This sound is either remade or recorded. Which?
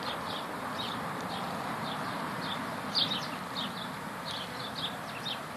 recorded